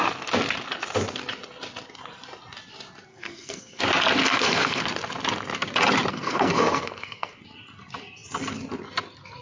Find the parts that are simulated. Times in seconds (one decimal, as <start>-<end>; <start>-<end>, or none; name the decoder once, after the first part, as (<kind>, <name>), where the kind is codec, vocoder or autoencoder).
3.1-3.8 (codec, SNAC); 4.2-4.8; 6.1-7.4